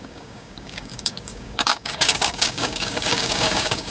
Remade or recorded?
remade